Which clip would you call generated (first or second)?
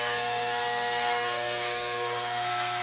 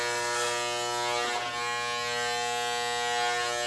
first